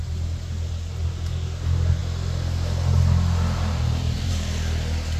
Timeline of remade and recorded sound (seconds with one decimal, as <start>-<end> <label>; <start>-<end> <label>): 0.0-5.2 recorded